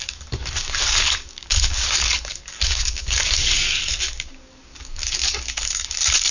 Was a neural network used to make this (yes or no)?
yes